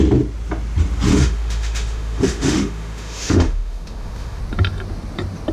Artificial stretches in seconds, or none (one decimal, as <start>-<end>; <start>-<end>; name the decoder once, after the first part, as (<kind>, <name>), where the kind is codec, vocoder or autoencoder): 1.1-4.4 (autoencoder, DAC-VAE)